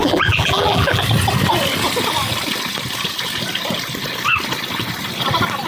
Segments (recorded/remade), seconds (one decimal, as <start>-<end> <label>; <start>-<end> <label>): 0.0-1.0 remade; 1.0-5.7 recorded